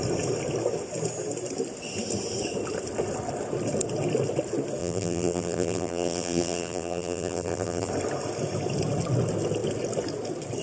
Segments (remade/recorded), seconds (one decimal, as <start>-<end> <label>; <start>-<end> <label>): 0.0-4.8 recorded; 4.8-7.9 remade; 7.9-10.6 recorded